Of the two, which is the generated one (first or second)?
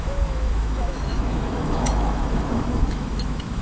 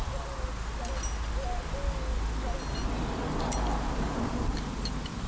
first